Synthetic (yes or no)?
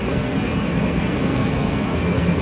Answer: yes